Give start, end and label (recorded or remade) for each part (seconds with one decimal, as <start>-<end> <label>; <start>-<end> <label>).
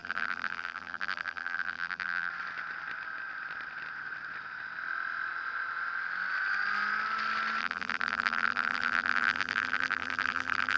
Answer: 0.0-2.3 remade; 2.3-7.6 recorded; 7.6-10.8 remade